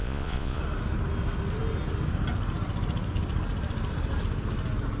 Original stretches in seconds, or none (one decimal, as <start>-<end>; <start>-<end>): 0.6-5.0